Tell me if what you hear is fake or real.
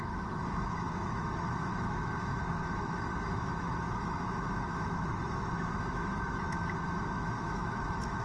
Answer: fake